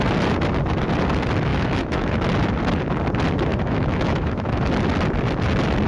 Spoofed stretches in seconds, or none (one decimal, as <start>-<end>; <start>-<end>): 1.5-2.1; 3.5-4.6